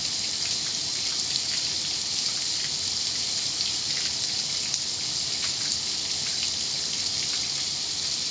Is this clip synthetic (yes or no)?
no